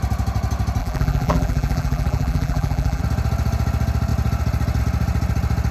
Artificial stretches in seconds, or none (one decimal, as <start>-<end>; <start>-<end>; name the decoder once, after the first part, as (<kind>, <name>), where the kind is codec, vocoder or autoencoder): 0.8-3.0 (vocoder, BigVGAN v2)